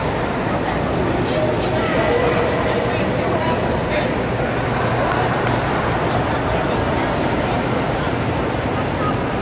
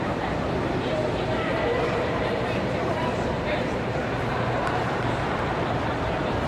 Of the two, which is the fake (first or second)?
second